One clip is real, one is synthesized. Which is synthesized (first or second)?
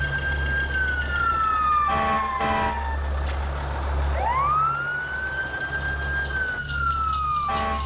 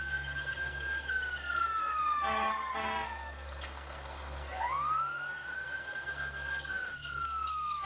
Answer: second